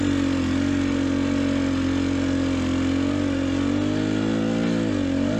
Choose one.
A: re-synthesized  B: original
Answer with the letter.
B